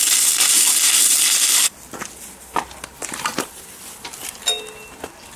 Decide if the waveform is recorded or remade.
remade